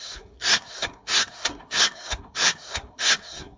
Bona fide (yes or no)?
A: no